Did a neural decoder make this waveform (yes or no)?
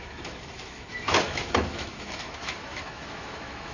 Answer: yes